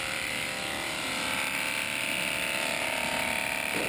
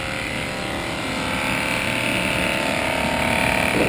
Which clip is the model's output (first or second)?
first